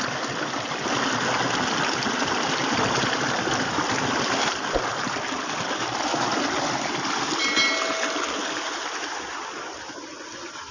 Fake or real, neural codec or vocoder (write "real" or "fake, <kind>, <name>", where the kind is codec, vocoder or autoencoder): real